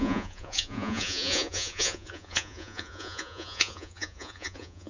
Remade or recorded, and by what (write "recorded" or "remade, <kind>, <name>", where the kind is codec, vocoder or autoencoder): remade, vocoder, Vocos